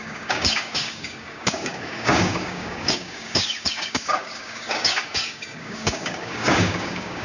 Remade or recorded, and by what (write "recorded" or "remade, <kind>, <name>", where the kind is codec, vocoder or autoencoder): remade, codec, DAC